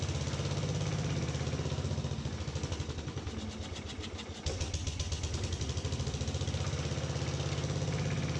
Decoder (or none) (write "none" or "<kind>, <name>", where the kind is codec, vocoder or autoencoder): none